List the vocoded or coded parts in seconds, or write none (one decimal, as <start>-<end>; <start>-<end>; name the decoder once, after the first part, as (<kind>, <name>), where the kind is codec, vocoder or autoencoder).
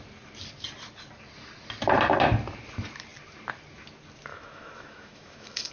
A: 4.3-5.7 (autoencoder, DAC-VAE)